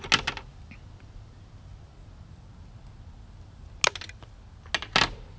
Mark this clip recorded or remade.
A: recorded